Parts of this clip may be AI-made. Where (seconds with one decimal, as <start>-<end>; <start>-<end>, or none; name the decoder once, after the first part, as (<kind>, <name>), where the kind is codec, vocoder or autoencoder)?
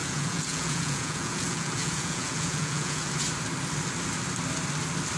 0.0-3.1 (vocoder, Vocos)